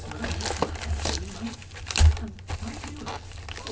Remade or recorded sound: recorded